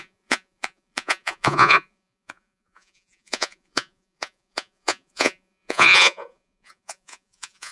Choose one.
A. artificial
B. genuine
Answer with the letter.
A